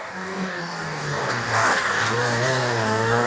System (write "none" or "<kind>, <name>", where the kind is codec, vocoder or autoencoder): codec, DAC